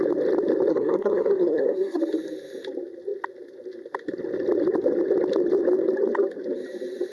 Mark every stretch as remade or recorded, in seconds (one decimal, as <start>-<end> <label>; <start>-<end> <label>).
0.0-0.7 recorded; 0.7-2.0 remade; 2.0-7.1 recorded